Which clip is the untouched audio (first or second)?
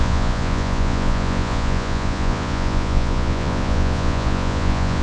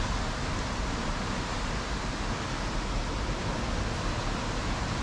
second